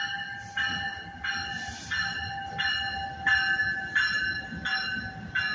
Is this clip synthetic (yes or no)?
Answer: no